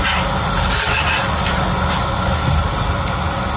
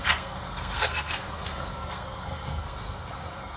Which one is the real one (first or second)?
first